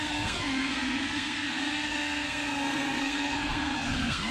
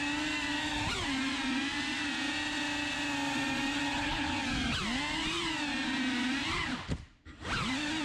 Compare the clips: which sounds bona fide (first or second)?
second